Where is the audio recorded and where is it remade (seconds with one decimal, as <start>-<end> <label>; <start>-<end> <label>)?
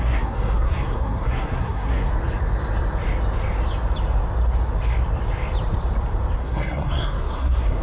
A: 0.0-2.1 remade; 2.1-6.4 recorded; 6.4-7.8 remade